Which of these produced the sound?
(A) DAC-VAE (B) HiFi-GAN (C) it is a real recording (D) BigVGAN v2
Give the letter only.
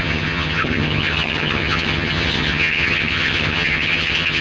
B